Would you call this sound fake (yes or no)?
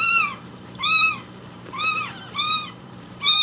yes